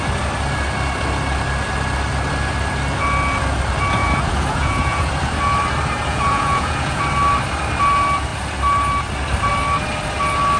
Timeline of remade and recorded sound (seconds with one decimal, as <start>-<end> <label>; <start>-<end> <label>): 0.0-4.0 recorded; 4.0-5.1 remade; 5.1-6.1 recorded; 6.1-7.0 remade; 7.0-10.6 recorded